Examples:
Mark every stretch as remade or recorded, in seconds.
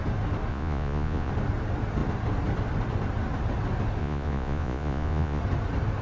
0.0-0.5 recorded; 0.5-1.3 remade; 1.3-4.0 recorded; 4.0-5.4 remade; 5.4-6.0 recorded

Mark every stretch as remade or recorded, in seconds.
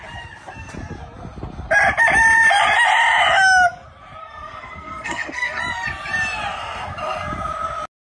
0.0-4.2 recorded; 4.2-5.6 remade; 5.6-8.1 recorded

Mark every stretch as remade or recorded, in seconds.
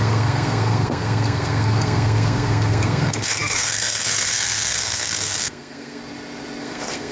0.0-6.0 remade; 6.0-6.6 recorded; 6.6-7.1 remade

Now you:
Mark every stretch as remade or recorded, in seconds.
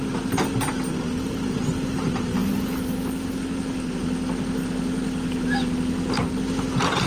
0.0-7.1 recorded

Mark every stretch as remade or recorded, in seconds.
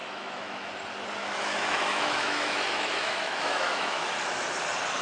0.0-0.7 remade; 0.7-1.2 recorded; 1.2-4.1 remade; 4.1-5.0 recorded